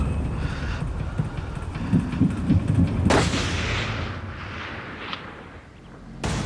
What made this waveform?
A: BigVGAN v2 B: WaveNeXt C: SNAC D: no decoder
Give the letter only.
D